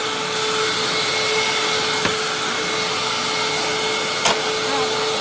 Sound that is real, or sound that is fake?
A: real